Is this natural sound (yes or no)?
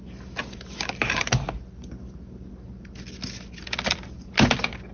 yes